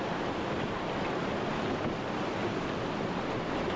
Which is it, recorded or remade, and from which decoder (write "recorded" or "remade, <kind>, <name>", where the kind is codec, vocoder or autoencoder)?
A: recorded